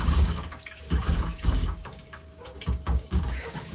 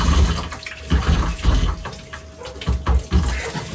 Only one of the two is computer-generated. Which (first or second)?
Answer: first